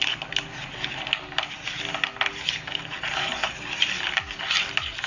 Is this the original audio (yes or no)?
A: yes